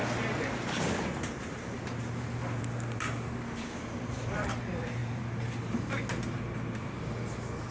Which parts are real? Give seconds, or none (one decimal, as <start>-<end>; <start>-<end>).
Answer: 4.6-5.0; 6.0-7.7